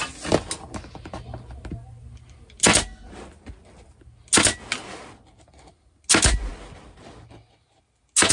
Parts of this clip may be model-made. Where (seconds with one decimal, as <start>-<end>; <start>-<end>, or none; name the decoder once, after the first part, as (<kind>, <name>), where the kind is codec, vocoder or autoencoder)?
none